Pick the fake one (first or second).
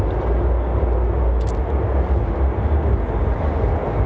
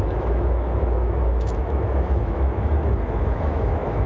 second